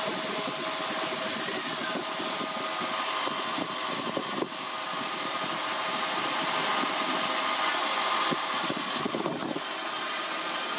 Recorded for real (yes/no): yes